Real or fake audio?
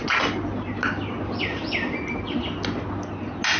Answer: real